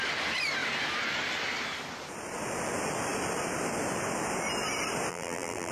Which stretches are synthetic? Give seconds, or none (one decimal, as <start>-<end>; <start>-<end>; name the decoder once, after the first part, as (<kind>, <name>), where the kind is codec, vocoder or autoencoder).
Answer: 5.1-5.7 (vocoder, BigVGAN v2)